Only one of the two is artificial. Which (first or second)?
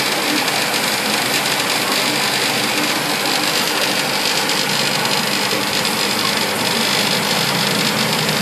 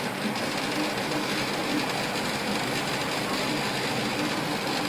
second